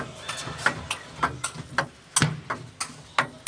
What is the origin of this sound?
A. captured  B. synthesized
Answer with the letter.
A